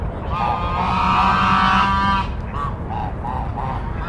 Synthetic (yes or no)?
no